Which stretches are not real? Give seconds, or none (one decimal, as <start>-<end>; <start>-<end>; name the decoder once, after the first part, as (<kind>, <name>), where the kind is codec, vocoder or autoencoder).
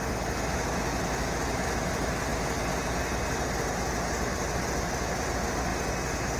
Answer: 0.5-1.9 (autoencoder, DAC-VAE)